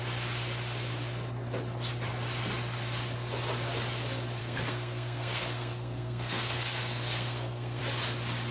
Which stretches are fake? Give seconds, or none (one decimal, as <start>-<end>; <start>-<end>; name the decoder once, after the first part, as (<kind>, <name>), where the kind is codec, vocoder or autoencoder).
4.4-7.8 (codec, SNAC)